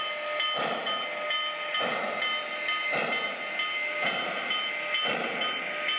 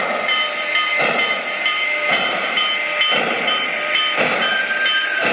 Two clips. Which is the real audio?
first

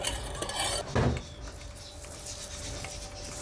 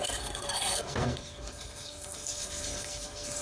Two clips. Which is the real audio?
first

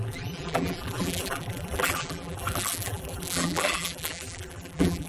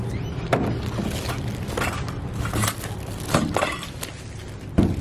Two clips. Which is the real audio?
second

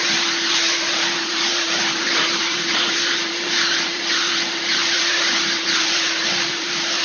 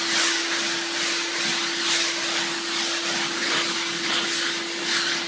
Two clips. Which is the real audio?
second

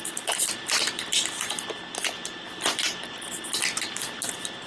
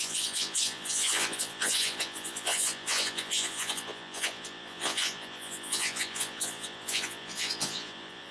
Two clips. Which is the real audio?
first